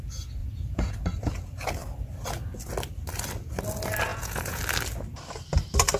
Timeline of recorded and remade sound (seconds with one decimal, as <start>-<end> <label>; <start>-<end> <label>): 0.0-0.4 recorded; 0.4-0.9 remade; 0.9-4.1 recorded; 4.1-4.6 remade; 4.6-6.0 recorded